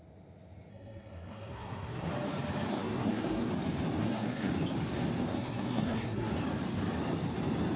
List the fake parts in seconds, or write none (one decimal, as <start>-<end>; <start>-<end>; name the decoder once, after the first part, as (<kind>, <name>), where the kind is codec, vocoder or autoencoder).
0.7-2.1 (codec, SNAC); 2.7-3.5; 4.0-4.5; 5.3-6.3